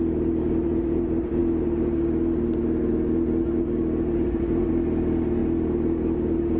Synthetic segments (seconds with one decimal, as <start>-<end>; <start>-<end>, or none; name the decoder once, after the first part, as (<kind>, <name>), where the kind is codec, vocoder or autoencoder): none